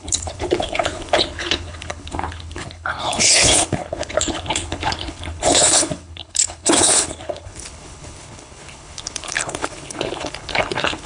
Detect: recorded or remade remade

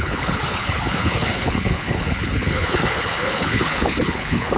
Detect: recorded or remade remade